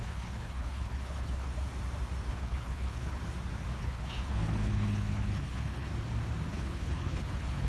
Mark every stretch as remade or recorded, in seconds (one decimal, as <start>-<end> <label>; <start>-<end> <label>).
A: 0.0-1.5 remade; 1.5-2.3 recorded; 2.3-3.2 remade; 3.2-3.8 recorded; 3.8-5.9 remade; 5.9-6.5 recorded; 6.5-7.7 remade